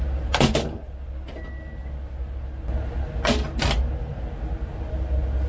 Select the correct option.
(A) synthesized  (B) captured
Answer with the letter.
B